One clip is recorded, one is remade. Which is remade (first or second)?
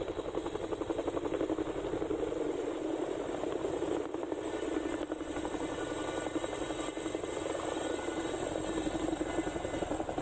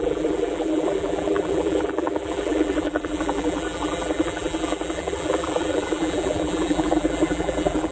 second